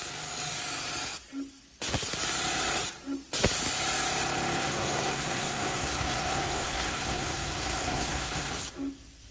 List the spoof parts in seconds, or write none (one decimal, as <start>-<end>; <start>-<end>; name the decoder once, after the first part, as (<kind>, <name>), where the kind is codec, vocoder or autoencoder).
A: 4.6-8.5 (codec, SNAC)